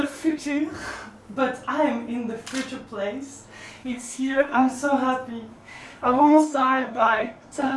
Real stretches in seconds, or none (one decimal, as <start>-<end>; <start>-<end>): 0.6-3.8; 4.7-5.5